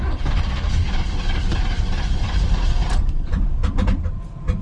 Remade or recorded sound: remade